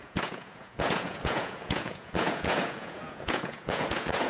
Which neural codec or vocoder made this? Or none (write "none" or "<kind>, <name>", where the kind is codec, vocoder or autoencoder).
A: vocoder, Vocos